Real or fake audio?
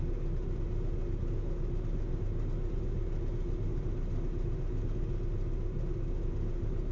real